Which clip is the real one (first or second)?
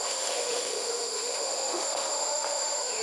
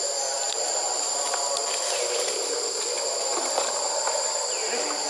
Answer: second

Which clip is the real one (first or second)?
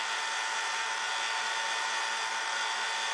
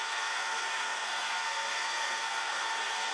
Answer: first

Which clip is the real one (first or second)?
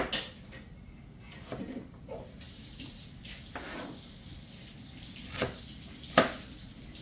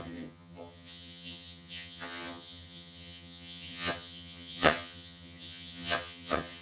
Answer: first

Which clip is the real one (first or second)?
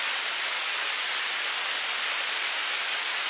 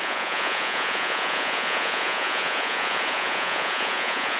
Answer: first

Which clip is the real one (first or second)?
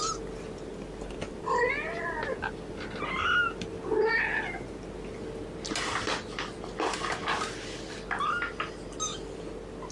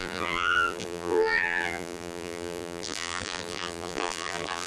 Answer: first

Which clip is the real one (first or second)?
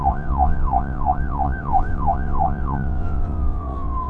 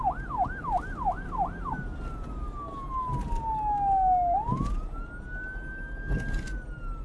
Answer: second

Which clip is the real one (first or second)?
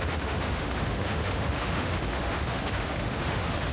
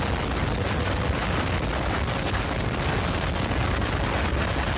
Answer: second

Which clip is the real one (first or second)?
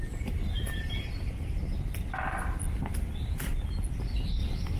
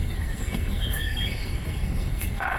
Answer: first